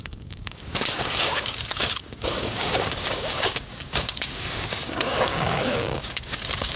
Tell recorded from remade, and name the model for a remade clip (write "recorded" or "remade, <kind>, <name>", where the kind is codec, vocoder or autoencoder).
remade, codec, DAC